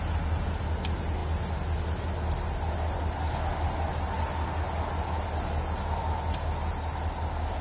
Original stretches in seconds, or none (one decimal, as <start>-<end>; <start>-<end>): 0.0-7.6